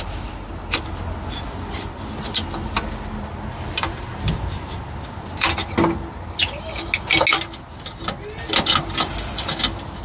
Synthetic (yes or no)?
no